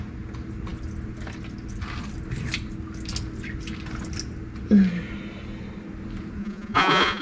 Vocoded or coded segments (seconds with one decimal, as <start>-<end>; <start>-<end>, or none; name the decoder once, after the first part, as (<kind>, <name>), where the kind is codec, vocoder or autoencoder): 6.4-7.2 (vocoder, Vocos)